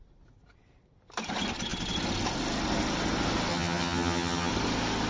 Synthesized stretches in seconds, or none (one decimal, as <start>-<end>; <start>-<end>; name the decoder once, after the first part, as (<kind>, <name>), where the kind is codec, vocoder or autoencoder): 3.5-4.5 (vocoder, HiFi-GAN)